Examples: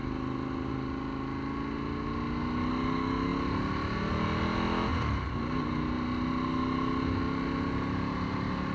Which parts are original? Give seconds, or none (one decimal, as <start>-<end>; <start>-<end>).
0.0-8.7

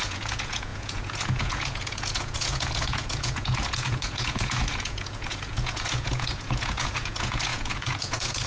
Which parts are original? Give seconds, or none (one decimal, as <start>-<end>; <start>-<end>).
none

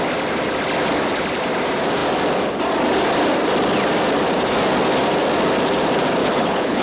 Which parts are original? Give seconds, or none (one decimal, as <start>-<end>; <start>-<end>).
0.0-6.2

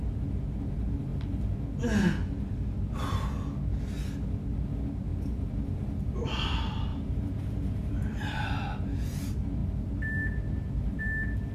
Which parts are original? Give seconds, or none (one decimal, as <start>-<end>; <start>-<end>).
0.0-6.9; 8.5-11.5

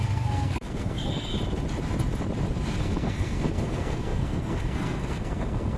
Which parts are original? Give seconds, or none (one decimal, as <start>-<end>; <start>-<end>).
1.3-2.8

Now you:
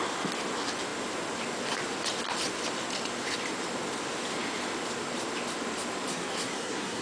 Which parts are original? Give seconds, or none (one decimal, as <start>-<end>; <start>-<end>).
0.0-6.1